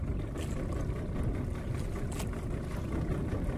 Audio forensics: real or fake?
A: real